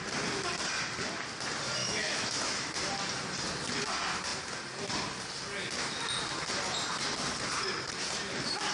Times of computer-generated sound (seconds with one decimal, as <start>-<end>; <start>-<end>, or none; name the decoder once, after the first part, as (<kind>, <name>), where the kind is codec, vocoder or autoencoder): 1.8-2.7 (autoencoder, DAC-VAE)